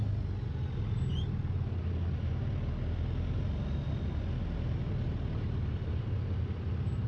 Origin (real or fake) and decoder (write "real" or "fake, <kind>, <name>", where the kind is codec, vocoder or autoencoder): real